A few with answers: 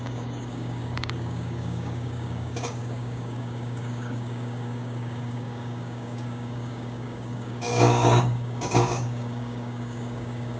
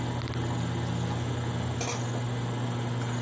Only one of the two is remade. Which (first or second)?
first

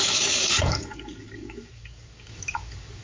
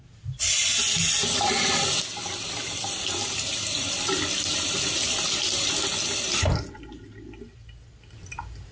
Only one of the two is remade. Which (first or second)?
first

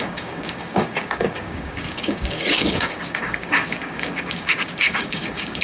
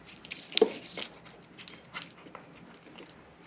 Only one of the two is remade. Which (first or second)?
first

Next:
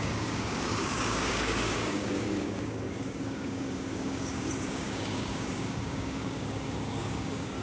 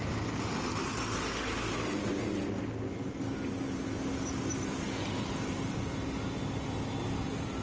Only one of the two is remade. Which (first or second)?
first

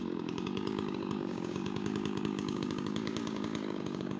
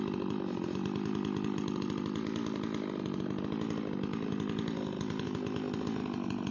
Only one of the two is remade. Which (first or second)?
first